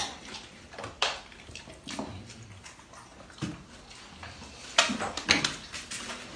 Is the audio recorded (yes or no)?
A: yes